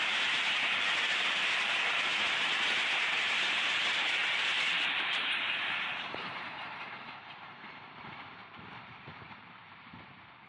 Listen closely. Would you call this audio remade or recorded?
remade